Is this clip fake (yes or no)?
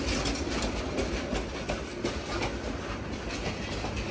no